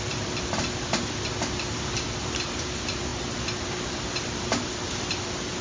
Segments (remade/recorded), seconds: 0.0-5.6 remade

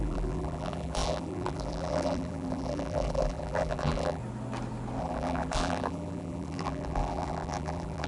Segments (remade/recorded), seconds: 0.0-4.2 remade; 4.2-5.0 recorded; 5.0-8.1 remade

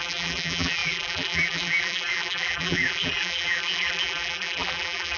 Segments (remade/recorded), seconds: 0.0-5.2 remade

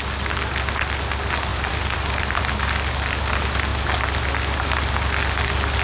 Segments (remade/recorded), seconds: 0.0-1.5 recorded; 1.5-2.4 remade; 2.4-5.8 recorded

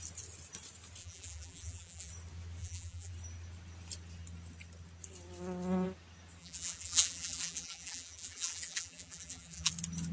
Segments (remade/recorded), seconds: 0.0-1.0 recorded; 1.0-2.1 remade; 2.1-2.6 recorded; 2.6-3.1 remade; 3.1-6.4 recorded; 6.4-9.7 remade; 9.7-10.1 recorded